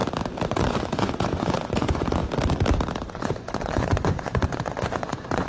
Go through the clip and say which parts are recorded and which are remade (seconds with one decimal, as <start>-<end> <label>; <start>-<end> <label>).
0.0-0.5 recorded; 0.5-2.2 remade; 2.2-3.1 recorded; 3.1-5.5 remade